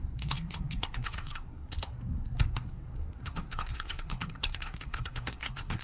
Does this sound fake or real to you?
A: fake